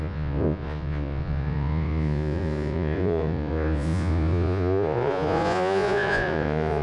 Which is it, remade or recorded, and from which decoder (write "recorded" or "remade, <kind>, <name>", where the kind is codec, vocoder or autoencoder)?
remade, vocoder, Vocos